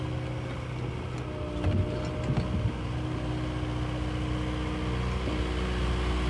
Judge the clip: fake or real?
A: real